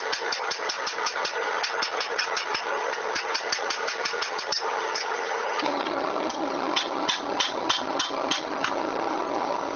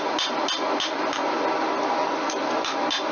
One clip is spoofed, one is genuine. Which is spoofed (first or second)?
first